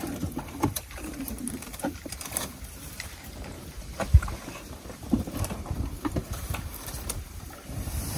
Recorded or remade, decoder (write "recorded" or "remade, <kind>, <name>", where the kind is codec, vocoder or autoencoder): remade, vocoder, BigVGAN v2